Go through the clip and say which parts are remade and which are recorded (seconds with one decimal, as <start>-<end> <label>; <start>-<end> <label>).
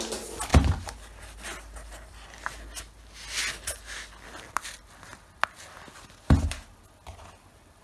0.0-7.8 recorded